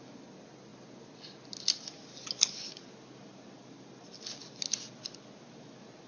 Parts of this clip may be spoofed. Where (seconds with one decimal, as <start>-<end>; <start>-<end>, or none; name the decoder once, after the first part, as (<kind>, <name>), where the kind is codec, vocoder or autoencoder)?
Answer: none